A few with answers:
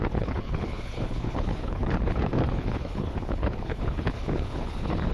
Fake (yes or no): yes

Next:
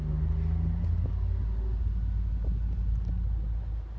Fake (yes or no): no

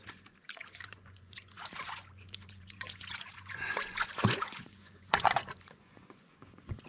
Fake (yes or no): yes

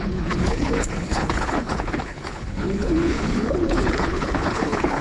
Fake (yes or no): yes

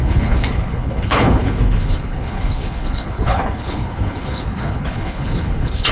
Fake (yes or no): yes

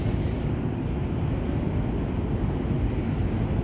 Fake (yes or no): no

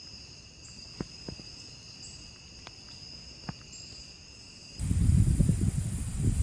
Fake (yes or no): no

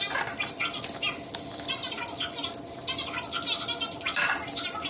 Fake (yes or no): no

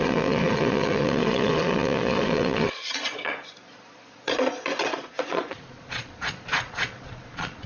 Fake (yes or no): yes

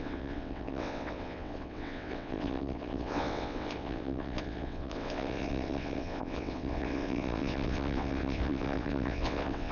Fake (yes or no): yes